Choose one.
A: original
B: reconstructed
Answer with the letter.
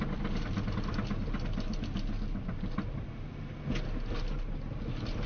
A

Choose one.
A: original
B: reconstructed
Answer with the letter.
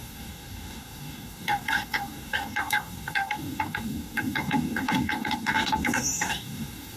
B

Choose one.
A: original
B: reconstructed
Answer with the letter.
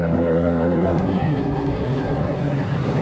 B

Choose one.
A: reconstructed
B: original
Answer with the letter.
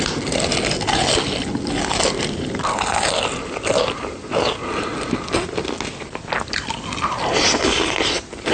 B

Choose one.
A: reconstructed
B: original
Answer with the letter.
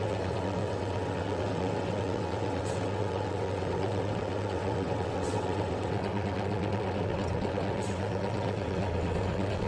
A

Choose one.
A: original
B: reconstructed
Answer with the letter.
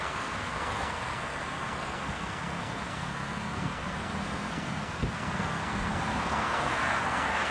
B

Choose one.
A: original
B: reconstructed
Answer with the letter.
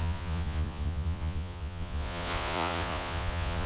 B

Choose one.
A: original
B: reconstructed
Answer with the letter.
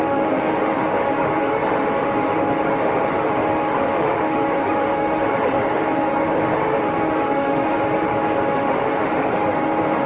B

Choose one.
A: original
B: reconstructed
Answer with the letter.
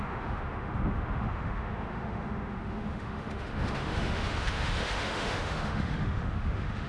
B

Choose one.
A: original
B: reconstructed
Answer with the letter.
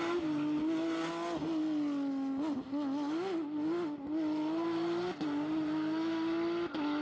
A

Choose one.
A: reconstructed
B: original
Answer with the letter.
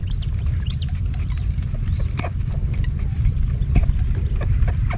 B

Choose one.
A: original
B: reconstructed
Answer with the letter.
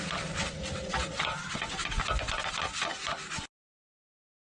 A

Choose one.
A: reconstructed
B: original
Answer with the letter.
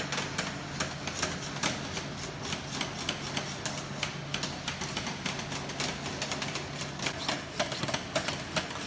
B